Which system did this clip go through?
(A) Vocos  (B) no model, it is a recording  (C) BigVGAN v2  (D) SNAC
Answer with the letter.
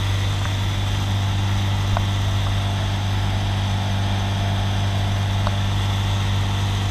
B